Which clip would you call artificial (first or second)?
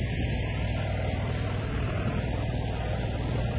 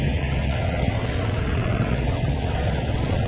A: second